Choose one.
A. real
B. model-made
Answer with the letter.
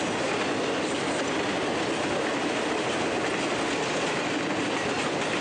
A